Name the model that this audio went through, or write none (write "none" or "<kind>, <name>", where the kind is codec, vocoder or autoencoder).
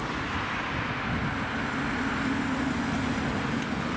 none